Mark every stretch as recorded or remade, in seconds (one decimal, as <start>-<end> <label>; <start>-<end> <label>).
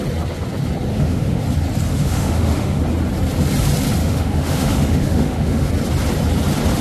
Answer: 0.0-0.9 recorded; 0.9-1.4 remade; 1.4-1.9 recorded; 1.9-2.8 remade; 2.8-4.0 recorded; 4.0-5.7 remade; 5.7-6.8 recorded